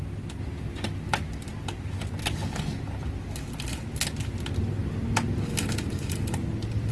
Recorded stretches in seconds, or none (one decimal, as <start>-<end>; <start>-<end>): 0.0-6.9